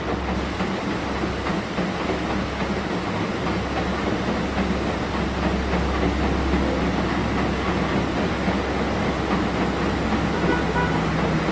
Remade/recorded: recorded